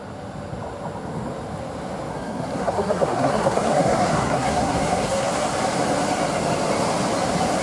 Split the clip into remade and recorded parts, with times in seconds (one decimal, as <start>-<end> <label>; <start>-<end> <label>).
0.0-2.1 recorded; 2.1-5.3 remade; 5.3-7.6 recorded